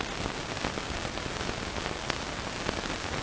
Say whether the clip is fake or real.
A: real